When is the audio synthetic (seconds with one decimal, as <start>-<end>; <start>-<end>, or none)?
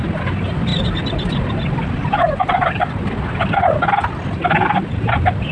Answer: none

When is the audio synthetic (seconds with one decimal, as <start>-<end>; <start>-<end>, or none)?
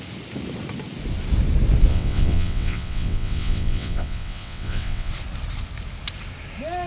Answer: 1.9-5.1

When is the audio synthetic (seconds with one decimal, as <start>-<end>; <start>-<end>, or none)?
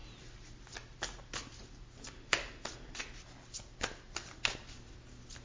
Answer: none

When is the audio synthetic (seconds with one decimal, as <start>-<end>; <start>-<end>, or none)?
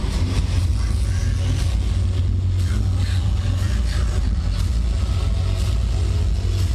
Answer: 0.0-0.7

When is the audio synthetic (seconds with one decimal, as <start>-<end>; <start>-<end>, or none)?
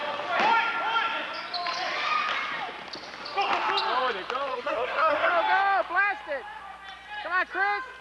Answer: 4.5-5.3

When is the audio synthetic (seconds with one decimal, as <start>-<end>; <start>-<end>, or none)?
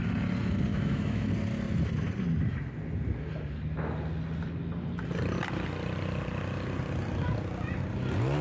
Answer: 0.7-1.3